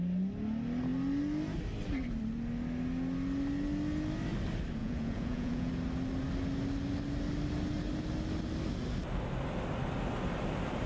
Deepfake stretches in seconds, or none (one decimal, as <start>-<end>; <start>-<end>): 4.8-5.7